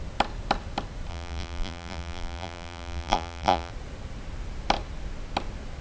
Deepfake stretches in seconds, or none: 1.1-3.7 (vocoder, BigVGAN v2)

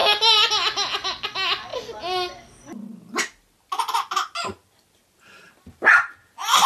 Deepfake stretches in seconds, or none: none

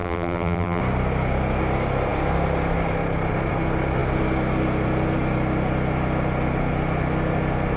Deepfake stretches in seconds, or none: 0.0-0.8 (vocoder, BigVGAN v2)

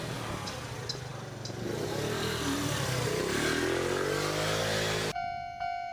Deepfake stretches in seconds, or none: none

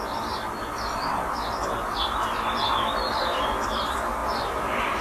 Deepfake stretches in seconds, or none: 4.2-5.0 (vocoder, BigVGAN v2)

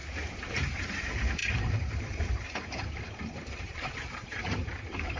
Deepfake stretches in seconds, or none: 0.5-5.2 (vocoder, BigVGAN v2)

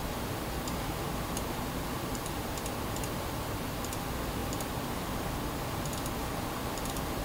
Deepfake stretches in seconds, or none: 0.0-0.8 (vocoder, BigVGAN v2); 2.1-3.0; 4.4-5.3; 6.2-7.2